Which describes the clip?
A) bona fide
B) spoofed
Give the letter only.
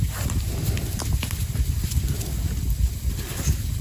A